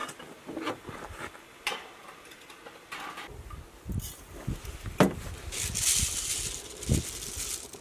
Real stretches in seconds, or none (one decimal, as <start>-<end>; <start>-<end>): 0.0-7.8